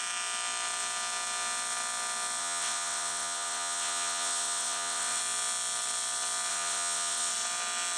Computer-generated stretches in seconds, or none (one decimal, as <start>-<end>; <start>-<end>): 2.4-5.2; 6.5-7.3